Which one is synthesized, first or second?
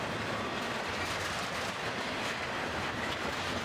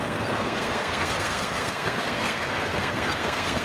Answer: second